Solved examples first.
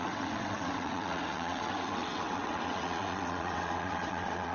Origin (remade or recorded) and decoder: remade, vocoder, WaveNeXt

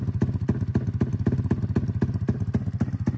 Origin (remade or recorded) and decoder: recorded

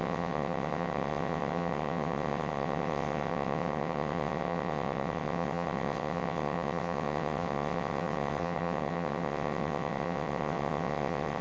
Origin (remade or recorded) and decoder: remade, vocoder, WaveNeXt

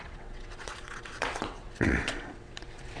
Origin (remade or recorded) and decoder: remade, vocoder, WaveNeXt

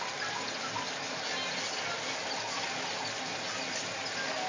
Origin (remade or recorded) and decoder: recorded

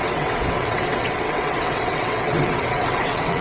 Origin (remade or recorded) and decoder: remade, vocoder, WaveNeXt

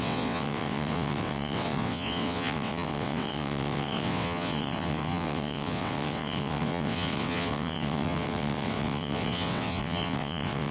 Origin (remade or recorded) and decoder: remade, vocoder, WaveNeXt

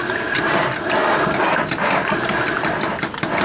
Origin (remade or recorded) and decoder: recorded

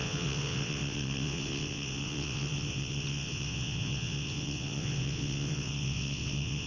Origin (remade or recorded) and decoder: remade, vocoder, WaveNeXt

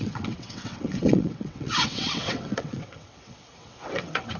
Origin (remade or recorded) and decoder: remade, vocoder, WaveNeXt